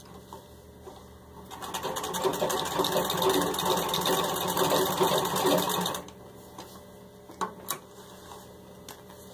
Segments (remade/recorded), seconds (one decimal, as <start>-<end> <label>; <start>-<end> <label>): 0.0-9.3 recorded